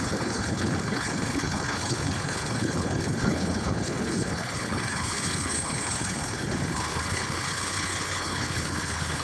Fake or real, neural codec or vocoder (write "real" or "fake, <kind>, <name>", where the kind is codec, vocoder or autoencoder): fake, codec, HILCodec